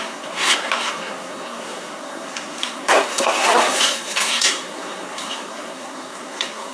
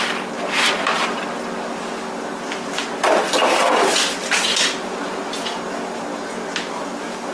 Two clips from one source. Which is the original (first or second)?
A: second